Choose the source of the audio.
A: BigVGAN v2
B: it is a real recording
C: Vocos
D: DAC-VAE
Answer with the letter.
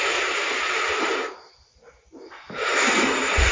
B